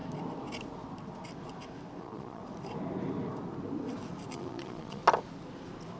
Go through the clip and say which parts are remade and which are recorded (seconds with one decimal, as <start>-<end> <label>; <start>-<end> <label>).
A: 0.0-2.0 recorded; 2.0-2.4 remade; 2.4-4.3 recorded; 4.3-5.0 remade; 5.0-6.0 recorded